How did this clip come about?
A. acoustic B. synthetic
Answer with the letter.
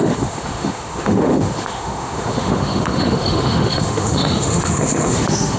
B